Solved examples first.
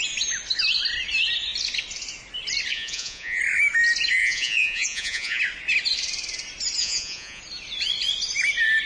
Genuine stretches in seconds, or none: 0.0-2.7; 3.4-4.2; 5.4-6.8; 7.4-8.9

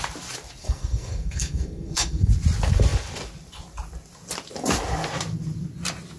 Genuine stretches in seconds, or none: 0.0-0.6; 2.3-6.2